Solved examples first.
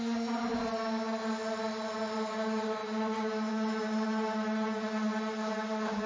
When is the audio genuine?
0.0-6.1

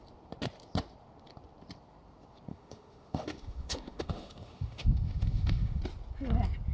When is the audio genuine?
0.0-2.5; 5.8-6.7

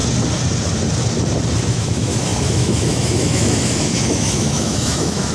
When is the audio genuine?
0.0-1.7

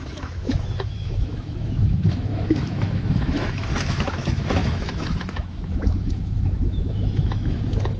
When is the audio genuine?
none

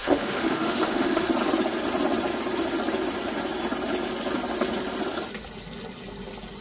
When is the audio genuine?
1.3-6.6

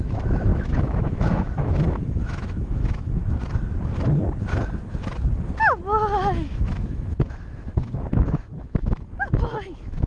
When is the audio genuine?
3.2-6.2